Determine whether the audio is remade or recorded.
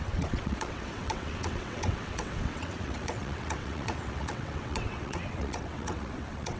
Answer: remade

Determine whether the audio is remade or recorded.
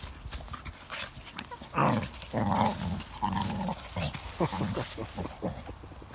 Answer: recorded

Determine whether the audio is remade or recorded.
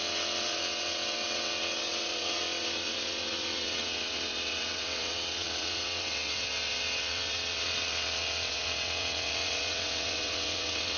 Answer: remade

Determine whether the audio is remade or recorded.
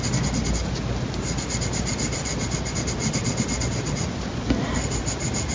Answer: recorded